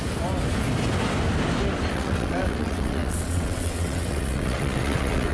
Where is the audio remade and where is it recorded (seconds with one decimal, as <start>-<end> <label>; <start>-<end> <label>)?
0.0-1.9 recorded; 1.9-5.3 remade